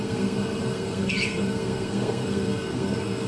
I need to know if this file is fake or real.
fake